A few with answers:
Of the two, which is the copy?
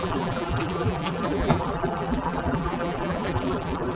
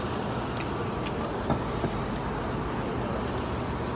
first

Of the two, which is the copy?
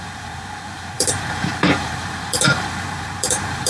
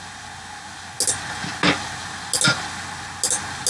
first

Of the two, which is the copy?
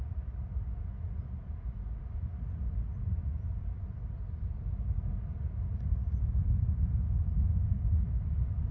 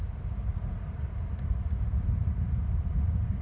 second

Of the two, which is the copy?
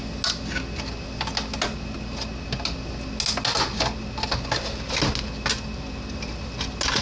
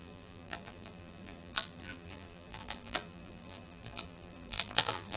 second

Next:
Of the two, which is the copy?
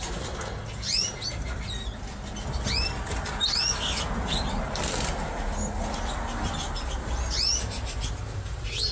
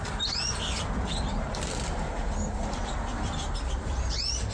second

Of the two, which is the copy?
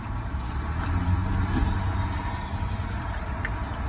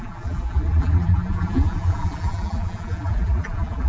second